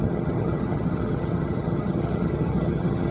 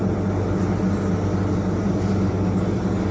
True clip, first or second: second